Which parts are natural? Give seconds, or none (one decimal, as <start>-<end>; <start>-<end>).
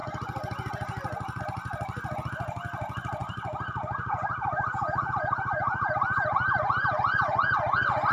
0.0-8.1